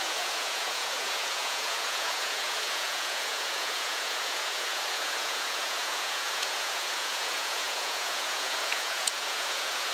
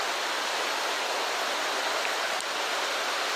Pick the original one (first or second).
second